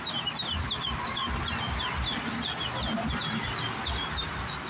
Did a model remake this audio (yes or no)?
no